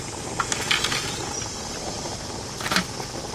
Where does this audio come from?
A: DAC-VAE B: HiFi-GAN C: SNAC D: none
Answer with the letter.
D